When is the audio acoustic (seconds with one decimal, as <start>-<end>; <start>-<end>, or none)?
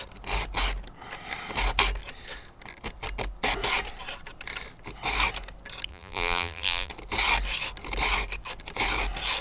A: 0.0-5.9; 6.9-9.4